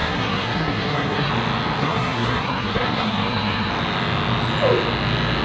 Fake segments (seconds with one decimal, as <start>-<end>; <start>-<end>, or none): 0.0-1.3; 1.8-3.7